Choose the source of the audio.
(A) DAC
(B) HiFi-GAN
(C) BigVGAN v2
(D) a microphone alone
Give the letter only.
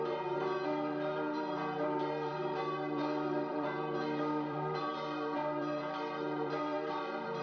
C